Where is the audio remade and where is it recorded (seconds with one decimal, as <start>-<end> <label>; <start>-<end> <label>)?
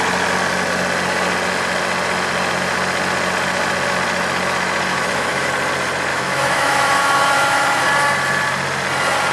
0.0-4.9 recorded; 4.9-5.5 remade; 5.5-6.1 recorded; 6.1-7.8 remade; 7.8-9.3 recorded